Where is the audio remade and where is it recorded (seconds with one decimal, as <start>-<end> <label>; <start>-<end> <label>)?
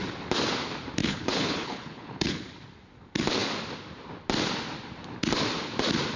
0.0-1.0 recorded; 1.0-2.4 remade; 2.4-6.2 recorded